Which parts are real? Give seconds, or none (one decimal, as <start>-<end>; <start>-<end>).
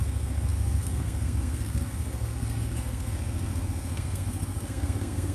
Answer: none